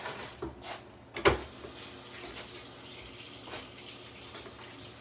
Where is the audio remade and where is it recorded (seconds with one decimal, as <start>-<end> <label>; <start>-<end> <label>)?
0.0-5.0 recorded